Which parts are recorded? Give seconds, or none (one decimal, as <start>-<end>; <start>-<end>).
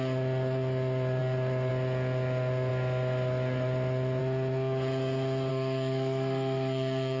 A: 0.0-5.5